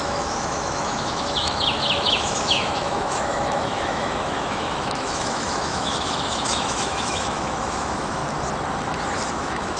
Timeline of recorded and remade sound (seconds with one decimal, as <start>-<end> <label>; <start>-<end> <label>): 0.0-8.2 remade; 8.2-9.3 recorded; 9.3-9.8 remade